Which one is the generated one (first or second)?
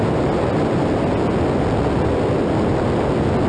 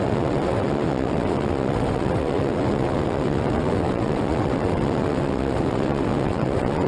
second